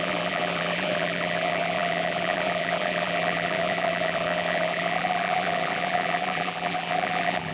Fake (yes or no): yes